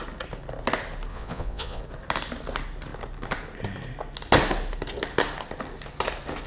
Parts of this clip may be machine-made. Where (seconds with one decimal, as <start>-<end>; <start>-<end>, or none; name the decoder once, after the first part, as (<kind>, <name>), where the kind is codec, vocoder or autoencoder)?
1.1-1.8 (vocoder, Vocos)